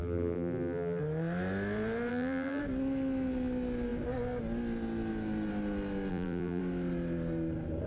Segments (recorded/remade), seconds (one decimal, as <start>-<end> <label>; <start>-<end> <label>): 0.0-1.0 remade; 1.0-2.1 recorded; 2.1-2.6 remade; 2.6-6.1 recorded; 6.1-6.6 remade; 6.6-7.9 recorded

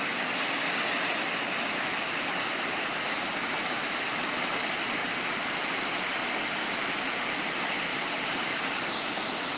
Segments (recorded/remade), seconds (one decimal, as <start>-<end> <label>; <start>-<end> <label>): 0.0-5.0 recorded; 5.0-6.0 remade; 6.0-7.9 recorded; 7.9-8.8 remade; 8.8-9.6 recorded

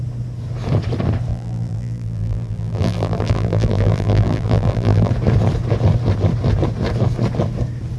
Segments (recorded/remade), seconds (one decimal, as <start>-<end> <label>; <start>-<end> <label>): 0.0-1.3 recorded; 1.3-5.1 remade; 5.1-8.0 recorded

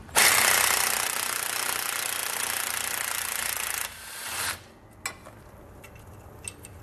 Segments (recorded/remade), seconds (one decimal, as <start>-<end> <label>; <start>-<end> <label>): 0.0-2.2 recorded; 2.2-4.7 remade; 4.7-6.8 recorded

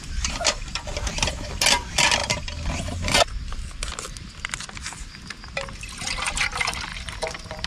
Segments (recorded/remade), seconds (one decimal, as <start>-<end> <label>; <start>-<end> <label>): 0.0-6.9 recorded; 6.9-7.7 remade

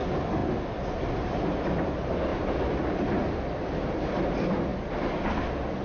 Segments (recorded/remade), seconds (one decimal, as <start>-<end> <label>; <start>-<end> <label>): 0.0-2.3 recorded; 2.3-2.8 remade; 2.8-5.8 recorded